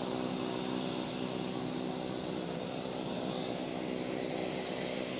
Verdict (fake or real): real